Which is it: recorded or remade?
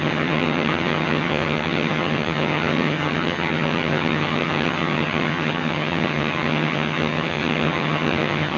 remade